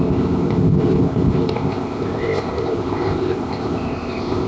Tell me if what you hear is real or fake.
fake